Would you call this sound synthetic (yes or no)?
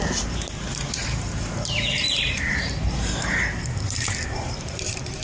yes